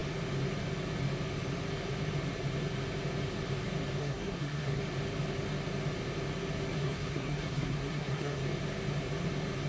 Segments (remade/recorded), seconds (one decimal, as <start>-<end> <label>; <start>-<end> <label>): 0.0-4.0 recorded; 4.0-4.8 remade; 4.8-6.7 recorded; 6.7-8.4 remade; 8.4-9.7 recorded